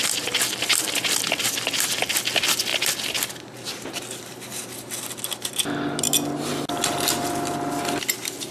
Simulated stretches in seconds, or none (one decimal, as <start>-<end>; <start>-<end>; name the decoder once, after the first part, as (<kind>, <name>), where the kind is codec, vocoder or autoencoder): none